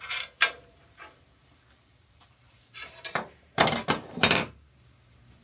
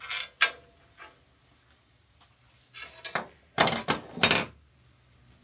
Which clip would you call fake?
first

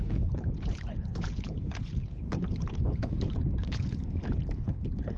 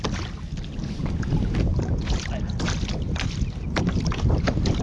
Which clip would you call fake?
first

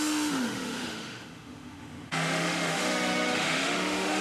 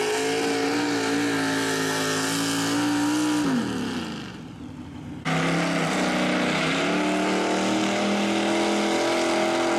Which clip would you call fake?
first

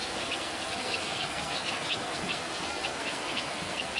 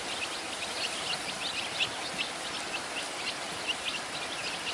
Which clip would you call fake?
first